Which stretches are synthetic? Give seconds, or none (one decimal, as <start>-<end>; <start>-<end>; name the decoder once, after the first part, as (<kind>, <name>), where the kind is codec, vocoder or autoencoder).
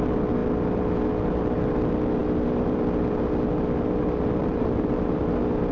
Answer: 4.4-5.2 (vocoder, BigVGAN v2)